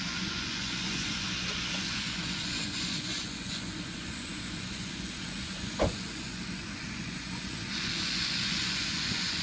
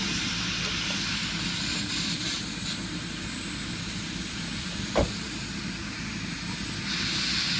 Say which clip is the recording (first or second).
second